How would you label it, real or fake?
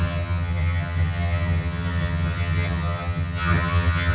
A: fake